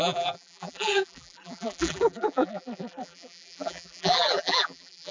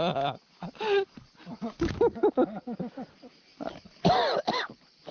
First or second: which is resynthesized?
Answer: first